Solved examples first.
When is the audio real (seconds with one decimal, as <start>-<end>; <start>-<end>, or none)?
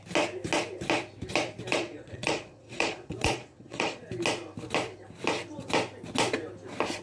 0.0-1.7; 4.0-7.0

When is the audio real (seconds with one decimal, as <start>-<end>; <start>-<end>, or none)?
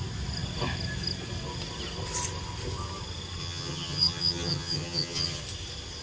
0.0-3.4; 5.4-6.0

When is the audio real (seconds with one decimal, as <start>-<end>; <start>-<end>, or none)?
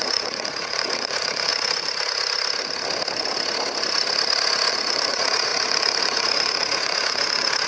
1.5-4.7